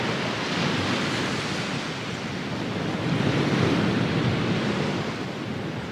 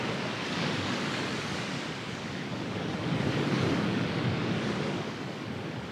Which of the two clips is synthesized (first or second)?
second